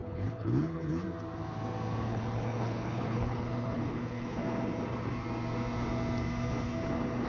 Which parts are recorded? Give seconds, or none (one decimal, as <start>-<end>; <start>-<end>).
1.0-2.1; 4.4-7.3